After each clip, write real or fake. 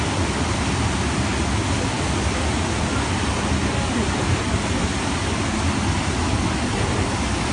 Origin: real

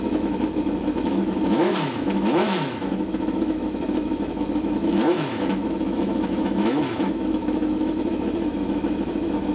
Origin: fake